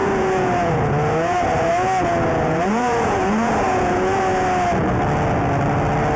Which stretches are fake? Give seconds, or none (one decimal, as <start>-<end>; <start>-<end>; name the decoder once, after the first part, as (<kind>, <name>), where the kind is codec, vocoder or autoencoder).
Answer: 0.0-4.3 (vocoder, Vocos)